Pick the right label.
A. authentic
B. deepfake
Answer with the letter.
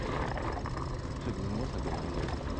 A